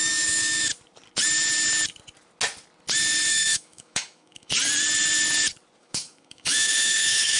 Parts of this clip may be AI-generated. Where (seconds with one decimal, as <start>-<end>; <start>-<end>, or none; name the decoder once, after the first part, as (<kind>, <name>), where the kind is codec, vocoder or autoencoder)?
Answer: 0.0-0.7 (autoencoder, DAC-VAE); 3.3-4.5; 5.8-7.4